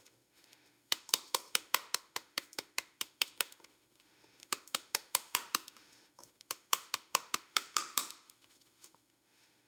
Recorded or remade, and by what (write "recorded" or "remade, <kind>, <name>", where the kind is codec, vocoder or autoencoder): remade, autoencoder, DAC-VAE